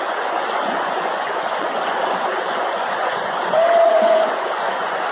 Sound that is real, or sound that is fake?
fake